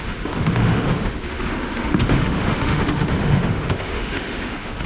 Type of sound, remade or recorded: remade